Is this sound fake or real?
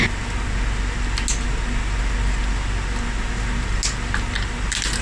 real